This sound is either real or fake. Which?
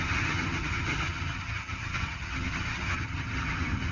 fake